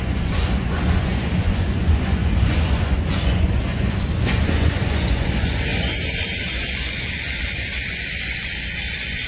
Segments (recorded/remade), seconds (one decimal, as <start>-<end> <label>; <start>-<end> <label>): 0.0-9.3 remade

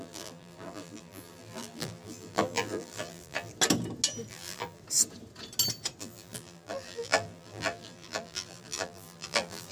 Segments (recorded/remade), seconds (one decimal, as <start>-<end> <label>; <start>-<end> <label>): 0.0-3.5 remade; 3.5-4.3 recorded; 4.3-4.8 remade; 4.8-6.0 recorded; 6.0-9.7 remade

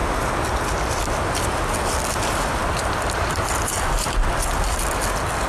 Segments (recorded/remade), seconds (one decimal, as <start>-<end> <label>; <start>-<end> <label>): 0.0-5.5 recorded

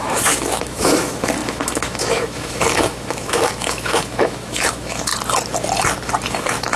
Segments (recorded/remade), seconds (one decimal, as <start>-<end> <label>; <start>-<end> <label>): 0.0-5.1 remade; 5.1-6.3 recorded; 6.3-6.8 remade